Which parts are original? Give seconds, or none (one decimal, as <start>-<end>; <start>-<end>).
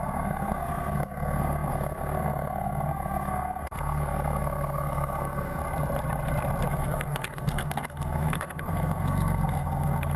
5.6-6.7